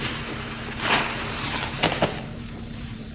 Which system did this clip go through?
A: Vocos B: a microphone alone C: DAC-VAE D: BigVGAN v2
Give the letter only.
D